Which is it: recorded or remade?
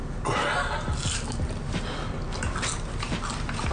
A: recorded